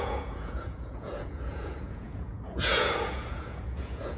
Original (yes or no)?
no